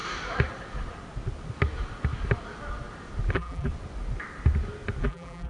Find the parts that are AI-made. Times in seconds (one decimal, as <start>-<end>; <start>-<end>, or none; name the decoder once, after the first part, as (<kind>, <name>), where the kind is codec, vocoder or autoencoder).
3.3-3.7 (vocoder, BigVGAN v2); 5.0-5.5